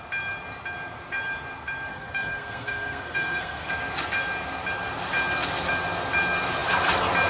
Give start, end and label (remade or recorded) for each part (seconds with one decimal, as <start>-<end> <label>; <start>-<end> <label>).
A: 0.0-1.9 recorded; 1.9-3.7 remade; 3.7-7.3 recorded